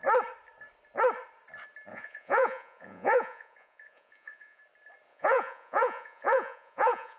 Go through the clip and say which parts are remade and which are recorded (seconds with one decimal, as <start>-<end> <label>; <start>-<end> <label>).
0.0-1.9 recorded; 1.9-4.6 remade; 4.6-5.1 recorded; 5.1-7.2 remade